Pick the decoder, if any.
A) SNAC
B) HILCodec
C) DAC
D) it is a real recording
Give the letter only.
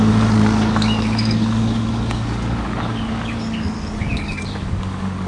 C